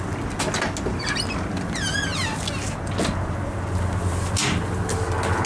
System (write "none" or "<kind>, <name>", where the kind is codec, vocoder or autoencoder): none